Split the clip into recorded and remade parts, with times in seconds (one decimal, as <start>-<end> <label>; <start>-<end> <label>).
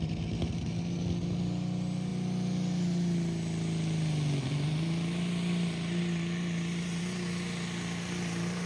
0.0-8.7 recorded